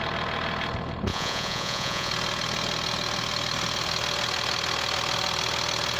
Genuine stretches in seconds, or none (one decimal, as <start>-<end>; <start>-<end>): 0.0-1.1; 2.1-6.0